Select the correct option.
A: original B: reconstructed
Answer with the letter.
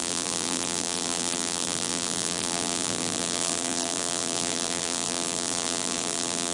B